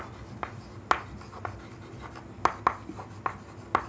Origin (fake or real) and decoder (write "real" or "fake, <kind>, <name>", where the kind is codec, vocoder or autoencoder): real